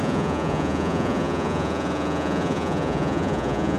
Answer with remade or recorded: remade